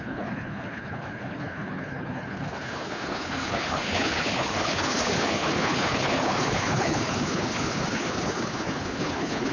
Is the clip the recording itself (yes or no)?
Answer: no